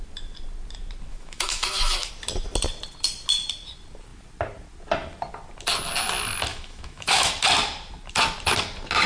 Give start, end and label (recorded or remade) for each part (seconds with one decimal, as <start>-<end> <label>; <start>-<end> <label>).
0.0-1.1 recorded; 1.1-2.1 remade; 2.1-6.5 recorded; 6.5-7.3 remade; 7.3-9.1 recorded